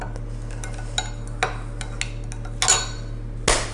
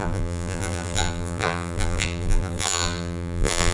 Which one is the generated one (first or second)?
second